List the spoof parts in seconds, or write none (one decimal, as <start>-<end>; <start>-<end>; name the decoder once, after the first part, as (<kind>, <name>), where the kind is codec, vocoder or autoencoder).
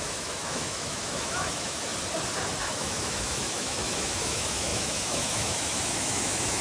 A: 0.0-1.9 (autoencoder, DAC-VAE); 2.6-6.6